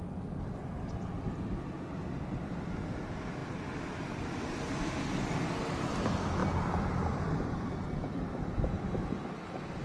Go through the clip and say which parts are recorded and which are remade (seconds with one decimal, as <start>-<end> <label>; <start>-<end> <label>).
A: 0.0-9.8 recorded